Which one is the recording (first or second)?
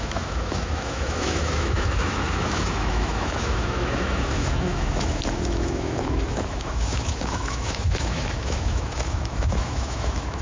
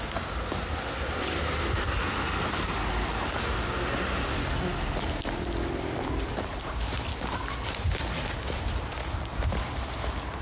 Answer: second